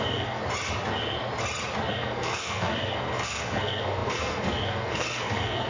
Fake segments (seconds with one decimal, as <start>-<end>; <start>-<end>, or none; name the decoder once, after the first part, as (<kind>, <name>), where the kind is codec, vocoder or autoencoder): 0.0-0.4 (codec, SNAC); 1.9-5.7